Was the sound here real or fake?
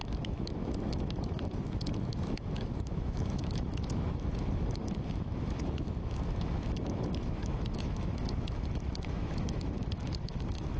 fake